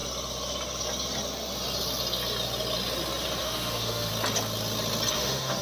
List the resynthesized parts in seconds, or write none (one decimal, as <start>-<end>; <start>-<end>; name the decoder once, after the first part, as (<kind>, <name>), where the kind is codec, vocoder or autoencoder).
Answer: 3.4-4.1 (autoencoder, DAC-VAE); 5.1-5.6